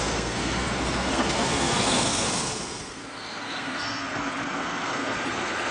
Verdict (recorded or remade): remade